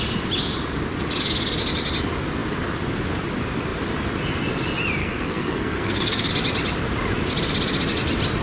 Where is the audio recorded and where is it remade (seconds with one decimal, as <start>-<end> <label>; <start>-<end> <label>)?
0.0-5.0 recorded; 5.0-6.3 remade; 6.3-8.4 recorded